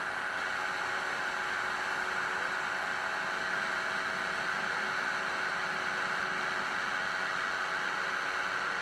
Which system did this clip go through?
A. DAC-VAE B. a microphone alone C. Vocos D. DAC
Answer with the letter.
B